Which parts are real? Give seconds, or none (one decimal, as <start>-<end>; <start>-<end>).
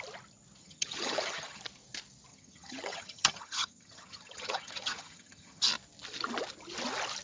0.0-0.6; 1.6-2.3; 5.6-7.2